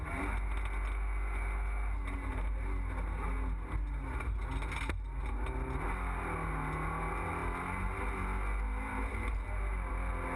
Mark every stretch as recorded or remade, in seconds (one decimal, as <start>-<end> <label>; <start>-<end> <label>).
0.0-10.4 recorded